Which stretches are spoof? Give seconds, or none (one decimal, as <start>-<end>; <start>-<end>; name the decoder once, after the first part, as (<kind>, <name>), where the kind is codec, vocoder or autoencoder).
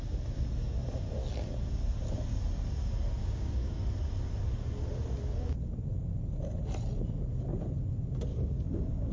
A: 3.2-3.7 (codec, DAC); 8.3-9.1